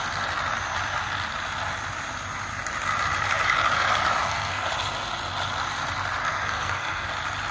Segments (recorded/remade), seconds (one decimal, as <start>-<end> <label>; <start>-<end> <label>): 0.0-4.2 recorded; 4.2-4.7 remade; 4.7-6.2 recorded; 6.2-7.1 remade; 7.1-7.5 recorded